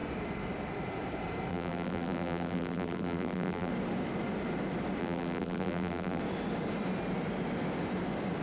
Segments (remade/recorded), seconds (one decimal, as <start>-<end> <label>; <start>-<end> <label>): 0.0-1.5 recorded; 1.5-3.7 remade; 3.7-5.0 recorded; 5.0-6.2 remade; 6.2-8.4 recorded